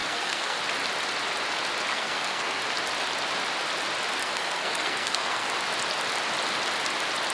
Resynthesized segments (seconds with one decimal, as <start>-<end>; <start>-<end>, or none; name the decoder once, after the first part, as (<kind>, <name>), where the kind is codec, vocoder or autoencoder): 0.0-0.6 (codec, SNAC); 1.9-2.6; 4.2-5.5